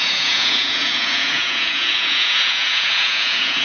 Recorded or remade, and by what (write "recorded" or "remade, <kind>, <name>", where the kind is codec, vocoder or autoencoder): remade, vocoder, Vocos